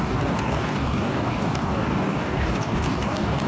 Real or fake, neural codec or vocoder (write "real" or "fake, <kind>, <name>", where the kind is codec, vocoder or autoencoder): fake, codec, DAC